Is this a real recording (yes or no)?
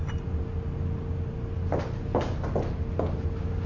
yes